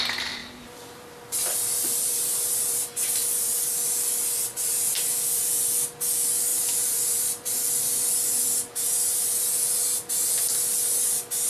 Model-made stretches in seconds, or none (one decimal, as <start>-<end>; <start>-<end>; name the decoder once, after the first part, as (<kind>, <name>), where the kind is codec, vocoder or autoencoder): 0.4-2.8 (vocoder, BigVGAN v2); 4.5-5.4; 6.5-7.7